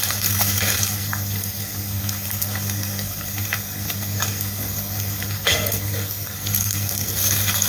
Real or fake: fake